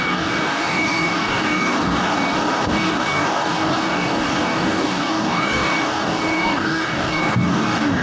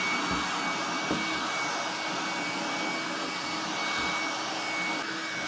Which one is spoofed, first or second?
first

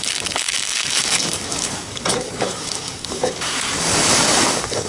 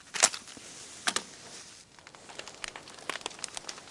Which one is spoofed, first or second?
first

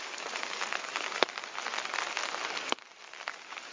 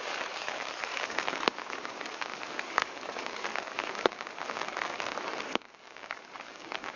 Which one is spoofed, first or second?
second